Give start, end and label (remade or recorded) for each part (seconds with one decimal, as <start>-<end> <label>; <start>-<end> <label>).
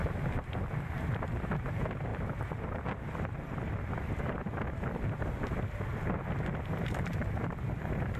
0.0-0.6 recorded; 0.6-2.1 remade; 2.1-5.2 recorded; 5.2-5.9 remade; 5.9-6.8 recorded; 6.8-8.2 remade